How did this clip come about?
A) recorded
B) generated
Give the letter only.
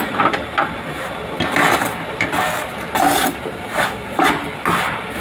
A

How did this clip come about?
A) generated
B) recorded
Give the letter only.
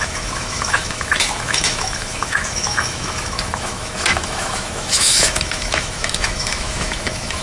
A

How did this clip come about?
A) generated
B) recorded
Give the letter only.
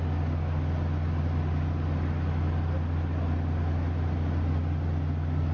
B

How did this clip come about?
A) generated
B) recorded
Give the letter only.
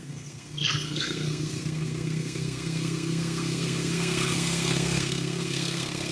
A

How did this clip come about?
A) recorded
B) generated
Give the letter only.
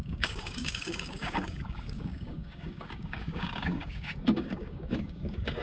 B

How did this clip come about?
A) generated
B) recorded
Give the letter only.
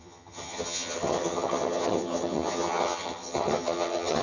A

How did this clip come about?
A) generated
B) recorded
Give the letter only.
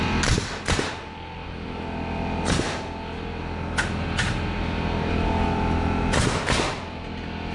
B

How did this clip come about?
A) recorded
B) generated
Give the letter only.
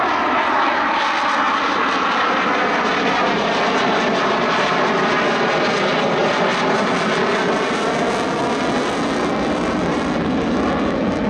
A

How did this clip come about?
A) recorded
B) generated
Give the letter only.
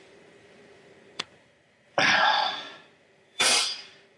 B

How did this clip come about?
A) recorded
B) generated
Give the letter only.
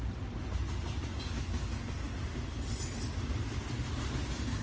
A